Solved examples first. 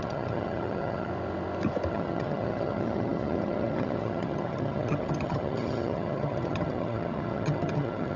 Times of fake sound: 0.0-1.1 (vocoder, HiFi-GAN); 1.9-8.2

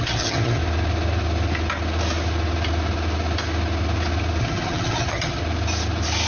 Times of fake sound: 0.0-0.6 (vocoder, HiFi-GAN); 4.4-5.4

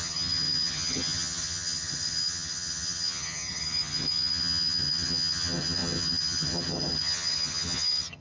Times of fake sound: 0.0-8.2 (vocoder, HiFi-GAN)

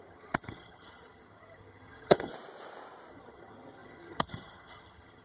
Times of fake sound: 0.0-2.3 (vocoder, HiFi-GAN); 3.1-5.2

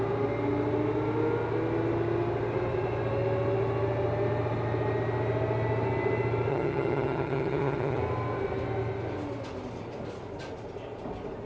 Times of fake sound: 6.5-8.0 (vocoder, HiFi-GAN)

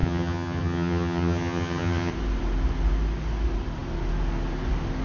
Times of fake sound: 0.0-2.1 (vocoder, HiFi-GAN)

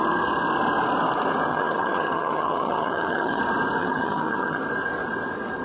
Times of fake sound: 1.5-3.4 (vocoder, HiFi-GAN); 3.8-4.6